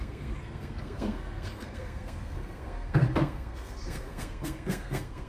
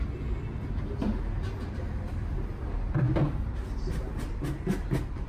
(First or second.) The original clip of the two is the second